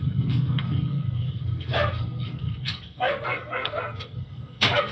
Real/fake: fake